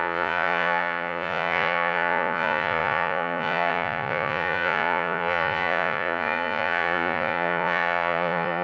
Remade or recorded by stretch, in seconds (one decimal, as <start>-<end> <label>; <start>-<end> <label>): 0.0-8.6 remade